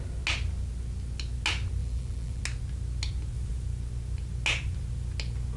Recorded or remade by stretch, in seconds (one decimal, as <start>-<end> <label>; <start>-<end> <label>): 0.0-1.8 recorded; 1.8-2.4 remade; 2.4-5.6 recorded

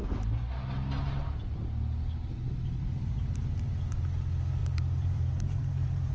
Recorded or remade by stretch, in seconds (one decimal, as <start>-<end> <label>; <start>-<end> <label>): 0.0-4.6 recorded; 4.6-6.1 remade

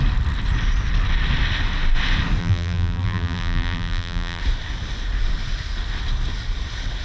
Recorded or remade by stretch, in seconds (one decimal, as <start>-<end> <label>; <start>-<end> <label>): 0.0-2.4 recorded; 2.4-4.4 remade; 4.4-7.0 recorded

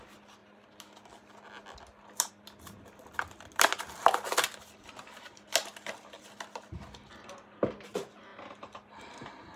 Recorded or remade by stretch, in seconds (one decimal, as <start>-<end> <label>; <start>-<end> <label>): 0.0-9.6 recorded

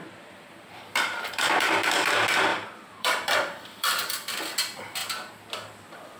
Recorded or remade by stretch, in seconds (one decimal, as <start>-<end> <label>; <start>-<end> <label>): 0.0-2.1 remade; 2.1-2.5 recorded; 2.5-4.1 remade; 4.1-6.2 recorded

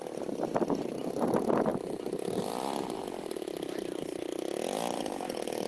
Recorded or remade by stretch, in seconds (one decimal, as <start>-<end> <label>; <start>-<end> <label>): 0.0-1.7 recorded; 1.7-3.0 remade; 3.0-5.7 recorded